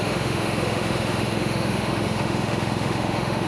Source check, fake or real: fake